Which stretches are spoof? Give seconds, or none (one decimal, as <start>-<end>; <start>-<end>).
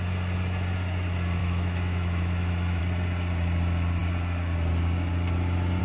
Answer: 1.4-2.8